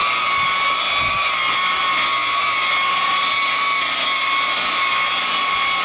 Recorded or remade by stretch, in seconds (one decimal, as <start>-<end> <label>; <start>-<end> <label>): 0.0-5.8 recorded